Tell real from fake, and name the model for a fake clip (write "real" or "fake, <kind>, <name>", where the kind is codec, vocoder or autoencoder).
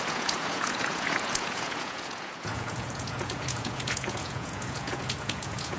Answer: fake, vocoder, Vocos